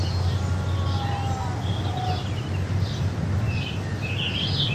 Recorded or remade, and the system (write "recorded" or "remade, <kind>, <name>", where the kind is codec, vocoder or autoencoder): recorded